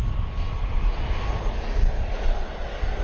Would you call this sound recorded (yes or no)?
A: yes